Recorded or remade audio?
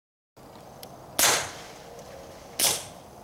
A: recorded